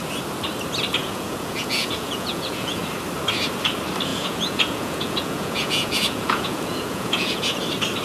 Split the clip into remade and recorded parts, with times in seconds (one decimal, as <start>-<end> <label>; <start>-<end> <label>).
0.0-1.0 recorded; 1.0-2.8 remade; 2.8-4.1 recorded; 4.1-7.6 remade; 7.6-8.0 recorded